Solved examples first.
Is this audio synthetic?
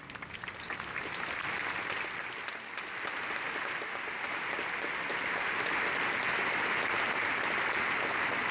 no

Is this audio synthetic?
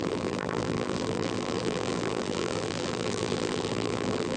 yes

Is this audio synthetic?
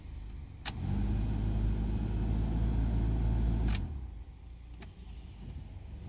no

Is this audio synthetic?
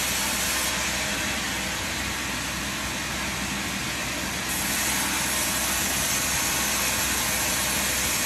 no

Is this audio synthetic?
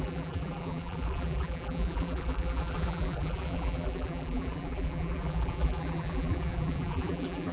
yes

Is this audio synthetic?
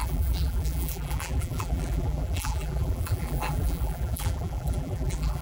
yes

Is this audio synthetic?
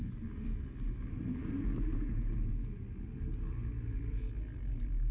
no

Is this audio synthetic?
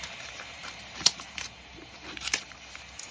yes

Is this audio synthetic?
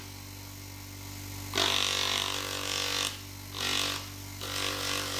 no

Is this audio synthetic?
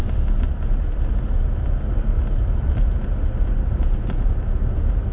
no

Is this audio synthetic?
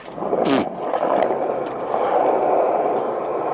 no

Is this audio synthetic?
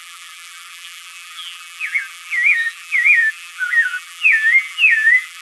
yes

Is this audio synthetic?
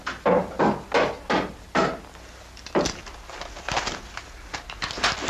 no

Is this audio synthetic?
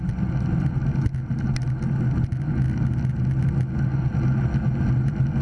no